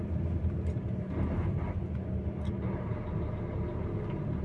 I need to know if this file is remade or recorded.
recorded